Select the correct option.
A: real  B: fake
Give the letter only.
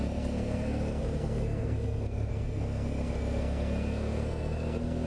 B